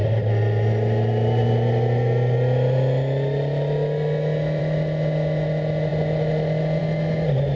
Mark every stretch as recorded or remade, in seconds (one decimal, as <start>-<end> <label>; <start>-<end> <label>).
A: 0.0-7.6 recorded